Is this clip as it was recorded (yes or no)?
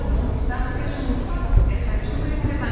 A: yes